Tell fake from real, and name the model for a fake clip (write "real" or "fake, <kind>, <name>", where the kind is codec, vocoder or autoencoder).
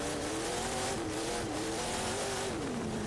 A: fake, vocoder, BigVGAN v2